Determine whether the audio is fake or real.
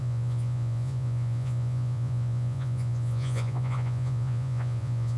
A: fake